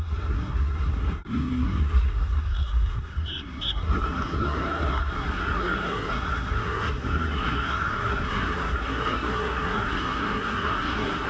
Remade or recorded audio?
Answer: remade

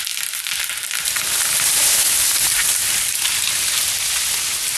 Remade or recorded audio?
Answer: recorded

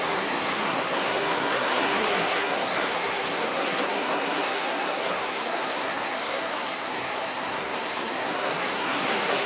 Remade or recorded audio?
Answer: remade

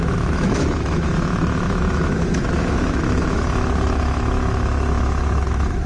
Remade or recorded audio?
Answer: remade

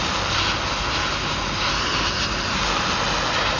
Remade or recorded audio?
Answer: recorded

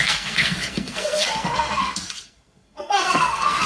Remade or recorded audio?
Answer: remade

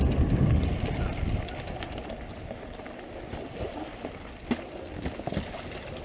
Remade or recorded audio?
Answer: recorded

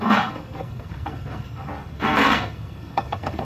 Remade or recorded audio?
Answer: remade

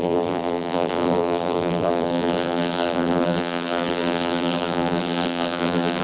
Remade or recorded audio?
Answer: remade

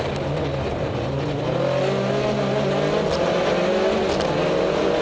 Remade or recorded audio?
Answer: recorded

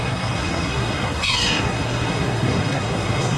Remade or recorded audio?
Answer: remade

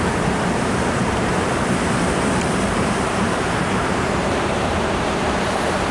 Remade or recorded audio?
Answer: remade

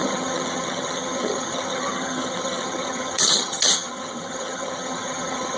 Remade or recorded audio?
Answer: remade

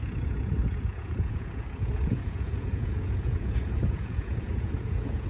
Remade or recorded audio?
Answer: remade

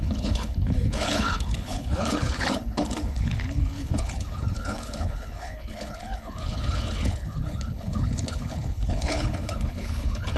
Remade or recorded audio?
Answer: remade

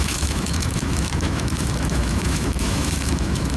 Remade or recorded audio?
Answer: remade